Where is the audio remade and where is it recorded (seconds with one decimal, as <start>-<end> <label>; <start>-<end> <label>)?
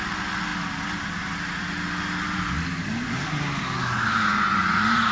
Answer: 0.0-5.1 recorded